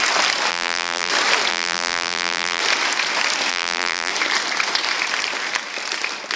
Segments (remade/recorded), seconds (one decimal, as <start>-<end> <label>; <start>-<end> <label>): 0.0-0.5 recorded; 0.5-1.1 remade; 1.1-1.5 recorded; 1.5-2.6 remade; 2.6-3.5 recorded; 3.5-4.1 remade; 4.1-6.4 recorded